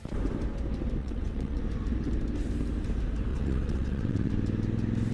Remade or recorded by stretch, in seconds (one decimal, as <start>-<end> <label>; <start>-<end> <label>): 0.0-1.0 recorded; 1.0-1.6 remade; 1.6-3.3 recorded; 3.3-4.3 remade; 4.3-5.1 recorded

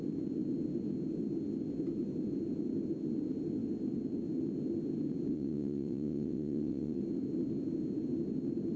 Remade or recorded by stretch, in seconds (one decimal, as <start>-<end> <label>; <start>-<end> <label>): 0.0-5.3 recorded; 5.3-7.0 remade; 7.0-8.8 recorded

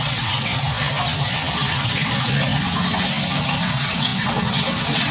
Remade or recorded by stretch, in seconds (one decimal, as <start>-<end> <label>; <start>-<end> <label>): 0.0-0.5 remade; 0.5-3.6 recorded; 3.6-5.1 remade

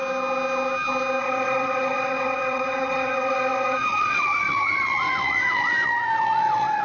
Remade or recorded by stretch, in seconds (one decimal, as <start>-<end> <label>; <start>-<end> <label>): 0.0-1.2 recorded; 1.2-6.8 remade

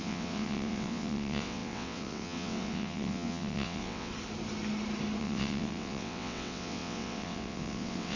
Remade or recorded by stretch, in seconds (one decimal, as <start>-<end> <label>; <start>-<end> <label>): 0.0-4.1 remade; 4.1-5.2 recorded; 5.2-8.2 remade

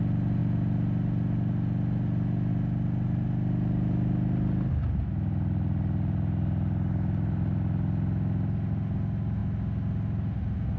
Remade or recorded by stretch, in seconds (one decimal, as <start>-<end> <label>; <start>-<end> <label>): 0.0-10.8 recorded

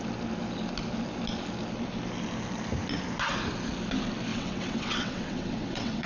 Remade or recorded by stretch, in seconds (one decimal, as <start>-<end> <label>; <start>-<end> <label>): 0.0-4.3 recorded; 4.3-6.1 remade